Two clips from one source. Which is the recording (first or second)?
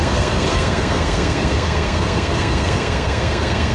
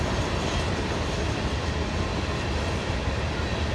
second